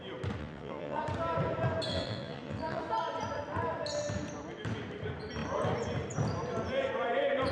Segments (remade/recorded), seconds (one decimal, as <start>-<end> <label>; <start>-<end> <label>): 0.0-0.4 recorded; 0.4-1.0 remade; 1.0-1.9 recorded; 1.9-2.8 remade; 2.8-7.5 recorded